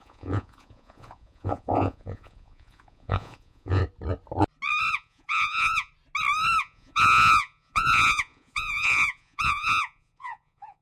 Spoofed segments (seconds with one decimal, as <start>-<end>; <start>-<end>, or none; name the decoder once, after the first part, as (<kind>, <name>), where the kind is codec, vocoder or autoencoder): 0.0-3.8 (vocoder, Vocos); 4.9-5.9; 6.6-10.8